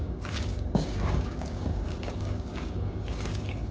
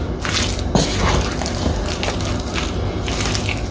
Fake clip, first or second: first